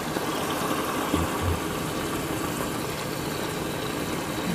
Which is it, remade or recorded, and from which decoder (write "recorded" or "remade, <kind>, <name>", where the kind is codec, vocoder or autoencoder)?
recorded